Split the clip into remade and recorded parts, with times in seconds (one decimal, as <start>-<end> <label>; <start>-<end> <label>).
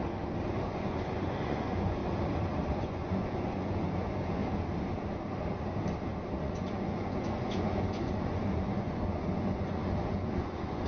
0.0-0.5 recorded; 0.5-2.0 remade; 2.0-2.7 recorded; 2.7-4.4 remade; 4.4-6.4 recorded; 6.4-10.9 remade